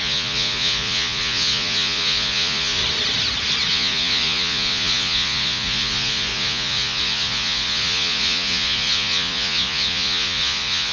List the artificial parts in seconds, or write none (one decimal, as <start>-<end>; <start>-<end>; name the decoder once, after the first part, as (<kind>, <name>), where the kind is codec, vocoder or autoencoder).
0.0-2.8 (vocoder, Vocos); 3.7-10.9